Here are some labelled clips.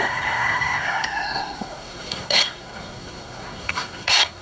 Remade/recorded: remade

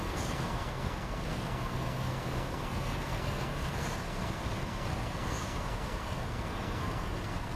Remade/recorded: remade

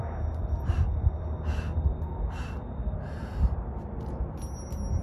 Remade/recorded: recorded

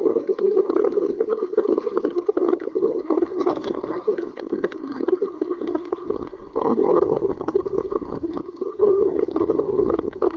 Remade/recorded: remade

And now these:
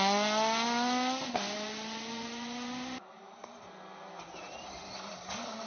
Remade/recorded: recorded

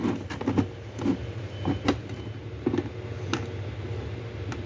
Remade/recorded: recorded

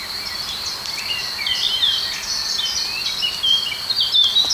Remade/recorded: recorded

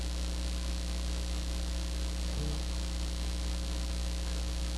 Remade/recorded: recorded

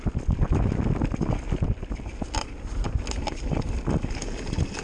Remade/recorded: recorded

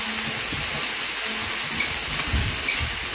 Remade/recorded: recorded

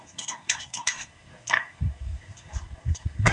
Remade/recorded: remade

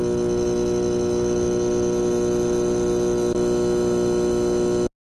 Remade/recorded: recorded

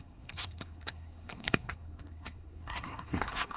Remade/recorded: remade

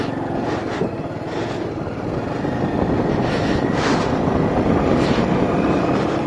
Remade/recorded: recorded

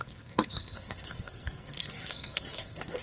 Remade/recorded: remade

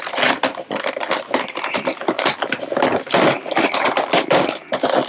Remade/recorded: recorded